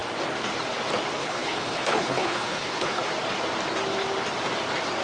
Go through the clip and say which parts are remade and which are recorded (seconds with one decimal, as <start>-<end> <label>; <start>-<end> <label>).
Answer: 0.0-1.2 recorded; 1.2-3.0 remade; 3.0-5.0 recorded